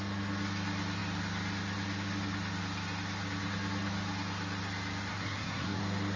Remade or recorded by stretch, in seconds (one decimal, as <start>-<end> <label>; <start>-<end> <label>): 0.0-5.1 recorded; 5.1-5.8 remade; 5.8-6.2 recorded